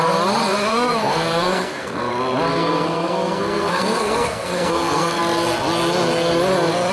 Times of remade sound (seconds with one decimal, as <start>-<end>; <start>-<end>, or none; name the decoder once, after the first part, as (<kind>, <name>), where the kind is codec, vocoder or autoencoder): 0.7-2.1 (codec, SNAC); 2.5-5.2